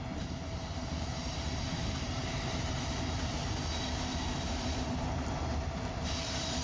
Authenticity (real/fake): fake